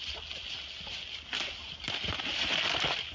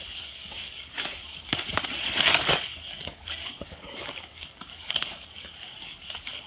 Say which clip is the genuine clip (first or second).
first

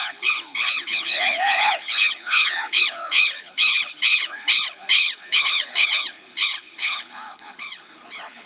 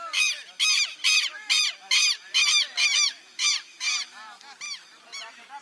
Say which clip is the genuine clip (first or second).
second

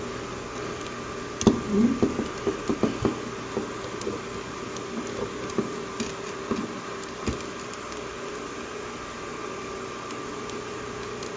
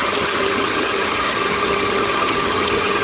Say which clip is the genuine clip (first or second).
first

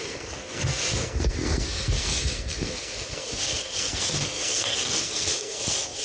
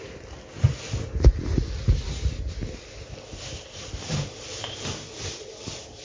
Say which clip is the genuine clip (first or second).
second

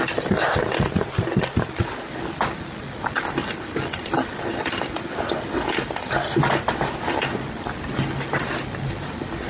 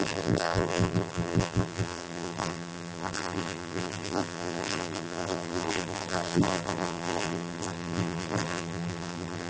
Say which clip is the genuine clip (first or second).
first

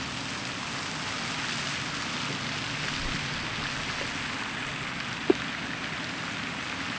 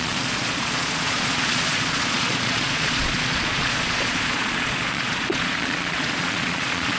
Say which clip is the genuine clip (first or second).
first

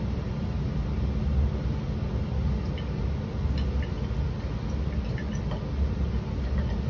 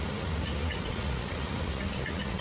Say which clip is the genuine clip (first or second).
first